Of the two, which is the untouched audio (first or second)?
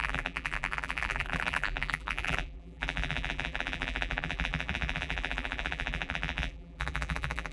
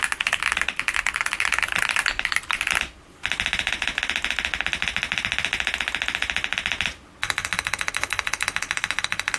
second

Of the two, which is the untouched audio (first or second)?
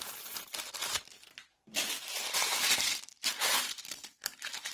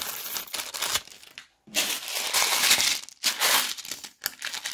second